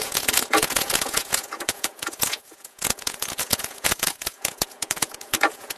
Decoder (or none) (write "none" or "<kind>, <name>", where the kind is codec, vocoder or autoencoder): vocoder, Vocos